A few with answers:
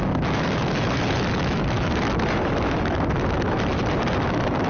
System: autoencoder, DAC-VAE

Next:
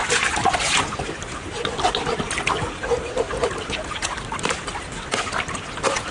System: none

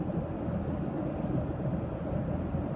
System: none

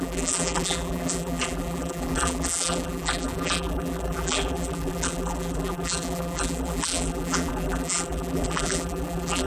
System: vocoder, BigVGAN v2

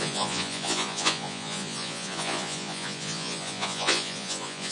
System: vocoder, Vocos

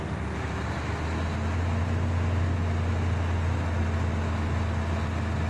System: none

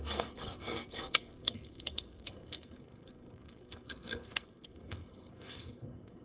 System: codec, SNAC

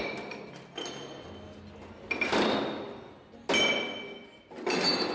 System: none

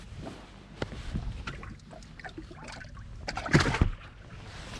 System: none